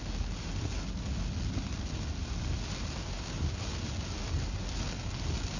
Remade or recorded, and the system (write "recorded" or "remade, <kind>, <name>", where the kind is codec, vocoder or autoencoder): recorded